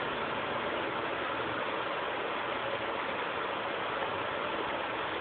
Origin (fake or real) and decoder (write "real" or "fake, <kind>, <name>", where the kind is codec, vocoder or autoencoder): real